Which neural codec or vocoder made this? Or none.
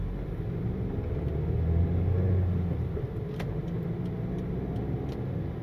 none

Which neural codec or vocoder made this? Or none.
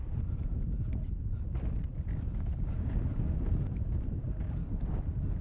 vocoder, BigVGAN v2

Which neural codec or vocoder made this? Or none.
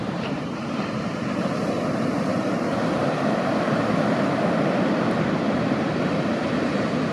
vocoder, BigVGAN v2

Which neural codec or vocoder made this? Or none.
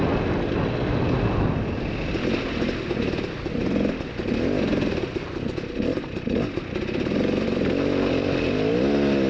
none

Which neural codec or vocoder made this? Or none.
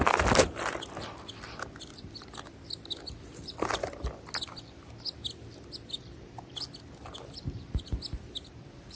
none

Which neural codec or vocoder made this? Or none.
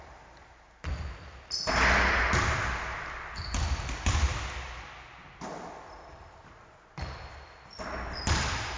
none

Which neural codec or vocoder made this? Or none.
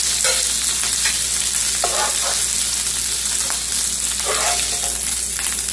none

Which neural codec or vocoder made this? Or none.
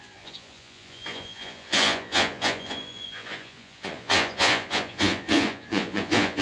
vocoder, Vocos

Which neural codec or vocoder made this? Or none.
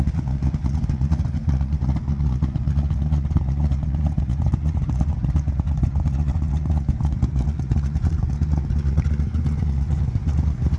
vocoder, Vocos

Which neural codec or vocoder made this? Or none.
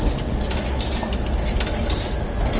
none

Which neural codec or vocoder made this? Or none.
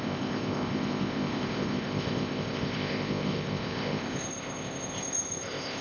codec, ZipCodec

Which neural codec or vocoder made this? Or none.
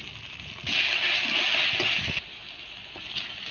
none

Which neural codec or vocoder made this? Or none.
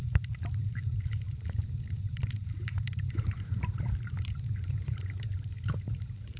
vocoder, BigVGAN v2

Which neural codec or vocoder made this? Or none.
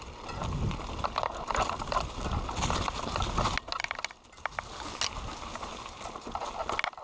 none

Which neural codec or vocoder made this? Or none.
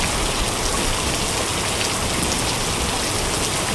none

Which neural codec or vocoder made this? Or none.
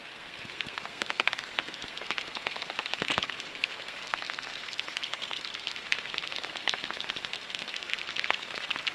codec, SNAC